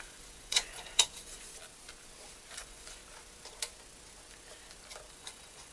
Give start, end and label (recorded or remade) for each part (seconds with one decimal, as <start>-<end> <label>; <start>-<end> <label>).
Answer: 0.0-1.5 remade; 1.5-2.5 recorded; 2.5-3.0 remade; 3.0-5.1 recorded; 5.1-5.7 remade